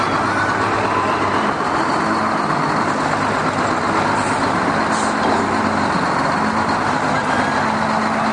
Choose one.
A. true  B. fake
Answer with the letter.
A